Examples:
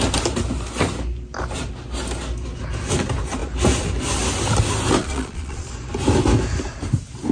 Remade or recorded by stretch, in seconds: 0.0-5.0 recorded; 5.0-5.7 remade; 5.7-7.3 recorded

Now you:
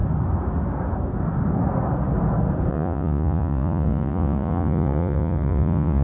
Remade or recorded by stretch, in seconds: 0.0-2.7 recorded; 2.7-6.0 remade

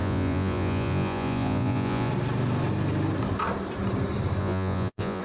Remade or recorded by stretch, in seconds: 0.0-2.1 remade; 2.1-4.4 recorded; 4.4-5.2 remade

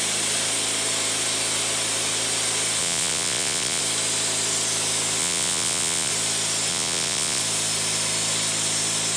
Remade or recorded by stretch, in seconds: 0.0-2.8 recorded; 2.8-3.8 remade; 3.8-5.2 recorded; 5.2-6.1 remade; 6.1-6.7 recorded; 6.7-7.4 remade; 7.4-9.2 recorded

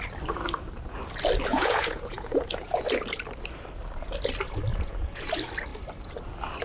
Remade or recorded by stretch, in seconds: 0.0-1.5 recorded; 1.5-2.8 remade; 2.8-4.7 recorded; 4.7-5.3 remade; 5.3-6.6 recorded

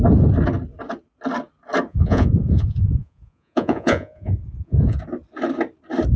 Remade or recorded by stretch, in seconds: 0.0-1.9 recorded; 1.9-5.0 remade; 5.0-6.2 recorded

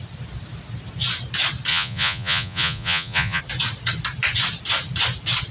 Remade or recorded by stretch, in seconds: 0.0-1.7 recorded; 1.7-3.4 remade; 3.4-5.5 recorded